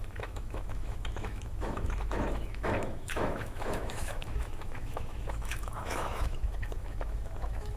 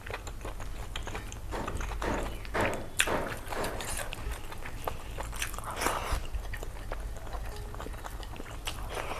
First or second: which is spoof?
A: first